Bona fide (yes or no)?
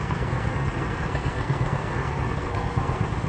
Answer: no